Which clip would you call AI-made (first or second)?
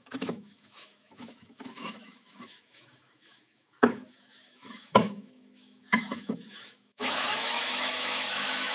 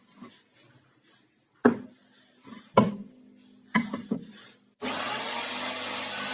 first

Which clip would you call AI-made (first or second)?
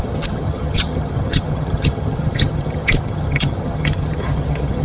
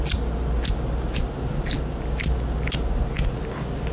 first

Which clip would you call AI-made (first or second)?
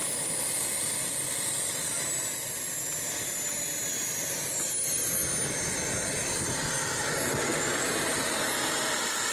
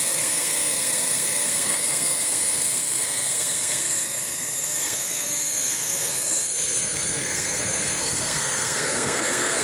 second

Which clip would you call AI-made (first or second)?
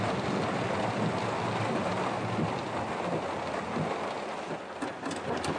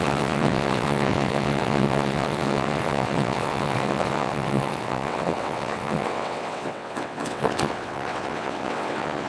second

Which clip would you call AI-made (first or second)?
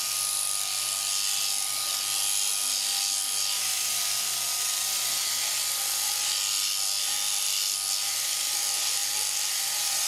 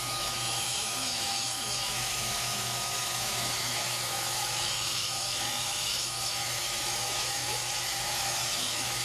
second